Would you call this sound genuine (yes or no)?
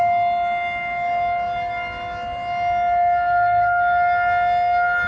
yes